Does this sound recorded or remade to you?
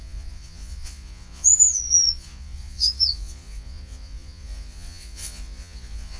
remade